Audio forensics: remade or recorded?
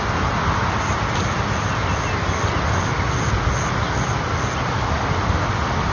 recorded